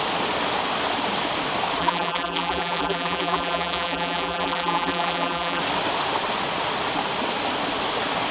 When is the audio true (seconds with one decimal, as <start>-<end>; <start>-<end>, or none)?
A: 0.0-1.8; 5.6-8.3